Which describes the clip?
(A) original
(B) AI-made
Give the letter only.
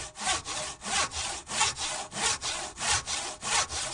A